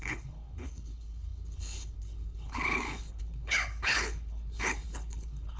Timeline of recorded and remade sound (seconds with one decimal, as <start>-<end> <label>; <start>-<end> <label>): 0.0-5.6 remade